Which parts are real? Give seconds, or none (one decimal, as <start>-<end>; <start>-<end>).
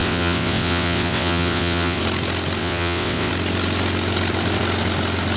2.0-2.6; 3.3-5.4